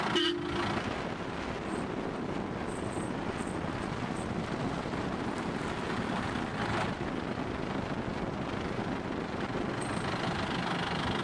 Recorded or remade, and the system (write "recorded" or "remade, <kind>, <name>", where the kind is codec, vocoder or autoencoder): recorded